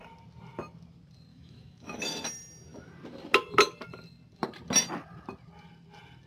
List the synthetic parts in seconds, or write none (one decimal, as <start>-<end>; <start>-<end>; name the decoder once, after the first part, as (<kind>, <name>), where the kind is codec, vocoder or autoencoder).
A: 1.3-2.0 (autoencoder, DAC-VAE)